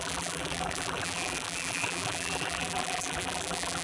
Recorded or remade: remade